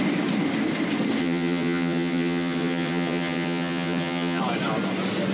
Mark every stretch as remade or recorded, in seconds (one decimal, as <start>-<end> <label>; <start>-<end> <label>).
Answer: 0.0-1.2 recorded; 1.2-4.4 remade; 4.4-5.3 recorded